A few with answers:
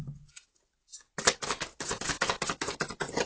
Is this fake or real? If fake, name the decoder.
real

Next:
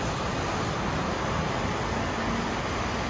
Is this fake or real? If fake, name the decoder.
real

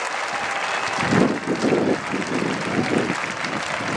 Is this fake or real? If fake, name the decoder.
real